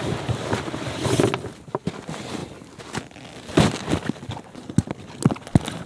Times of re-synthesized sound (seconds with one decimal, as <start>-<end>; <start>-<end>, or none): none